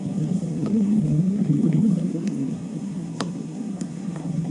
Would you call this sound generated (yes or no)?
yes